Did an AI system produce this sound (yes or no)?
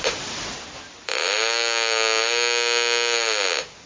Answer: no